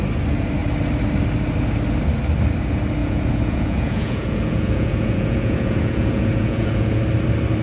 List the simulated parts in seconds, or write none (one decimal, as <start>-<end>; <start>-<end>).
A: 3.0-7.0